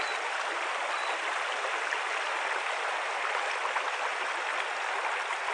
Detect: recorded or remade recorded